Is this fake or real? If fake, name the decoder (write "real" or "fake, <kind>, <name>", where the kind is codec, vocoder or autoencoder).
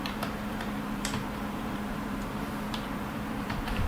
fake, vocoder, BigVGAN v2